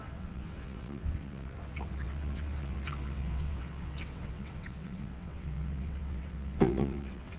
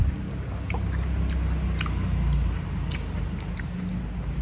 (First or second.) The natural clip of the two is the second